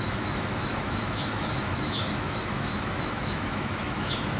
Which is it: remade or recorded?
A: remade